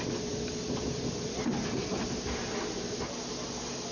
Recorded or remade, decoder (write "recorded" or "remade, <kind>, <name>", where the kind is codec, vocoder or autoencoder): recorded